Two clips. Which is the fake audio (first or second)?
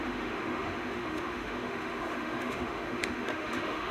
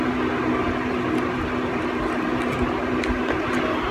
first